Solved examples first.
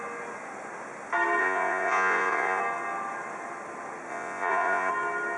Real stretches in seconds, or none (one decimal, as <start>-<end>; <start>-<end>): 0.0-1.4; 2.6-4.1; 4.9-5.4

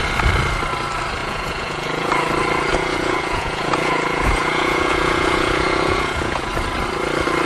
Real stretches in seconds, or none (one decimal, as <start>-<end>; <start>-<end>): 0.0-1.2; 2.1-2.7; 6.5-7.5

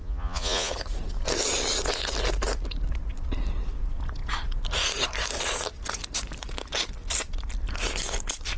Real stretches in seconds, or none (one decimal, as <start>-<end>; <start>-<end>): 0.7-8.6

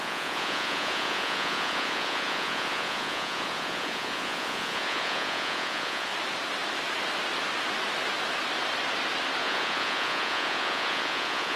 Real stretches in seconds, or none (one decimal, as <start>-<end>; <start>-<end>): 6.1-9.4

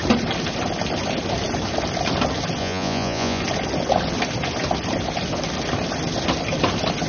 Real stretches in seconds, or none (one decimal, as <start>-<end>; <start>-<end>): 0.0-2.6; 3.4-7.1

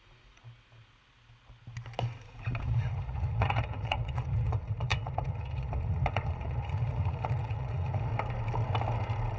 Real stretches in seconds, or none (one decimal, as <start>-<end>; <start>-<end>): 0.4-2.6; 8.1-9.4

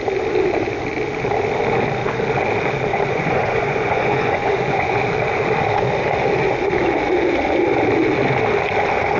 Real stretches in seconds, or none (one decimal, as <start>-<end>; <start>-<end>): 0.0-2.9; 5.0-9.2

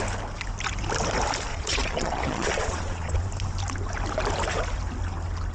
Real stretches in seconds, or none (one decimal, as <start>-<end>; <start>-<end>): 0.0-1.5; 3.3-5.5